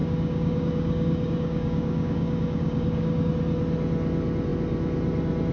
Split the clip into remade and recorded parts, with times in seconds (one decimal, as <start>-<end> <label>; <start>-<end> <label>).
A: 0.0-3.3 remade; 3.3-5.5 recorded